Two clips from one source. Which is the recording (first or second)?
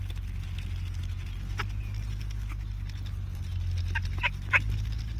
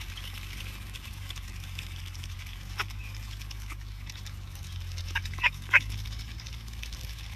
first